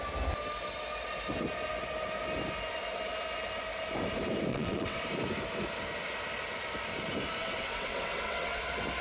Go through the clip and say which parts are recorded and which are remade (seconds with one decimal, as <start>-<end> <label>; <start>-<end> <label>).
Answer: 0.0-4.5 recorded; 4.5-5.0 remade; 5.0-7.4 recorded; 7.4-8.6 remade; 8.6-9.0 recorded